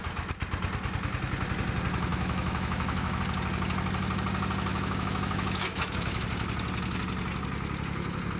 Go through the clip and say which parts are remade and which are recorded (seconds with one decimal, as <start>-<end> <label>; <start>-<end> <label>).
0.0-2.1 recorded; 2.1-3.2 remade; 3.2-4.7 recorded; 4.7-6.2 remade; 6.2-8.4 recorded